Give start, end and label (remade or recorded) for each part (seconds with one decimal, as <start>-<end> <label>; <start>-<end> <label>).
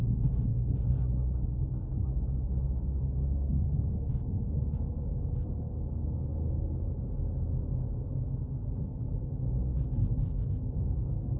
0.0-0.5 remade; 0.5-1.5 recorded; 1.5-6.3 remade; 6.3-9.6 recorded; 9.6-11.4 remade